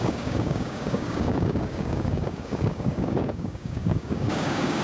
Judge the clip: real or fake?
fake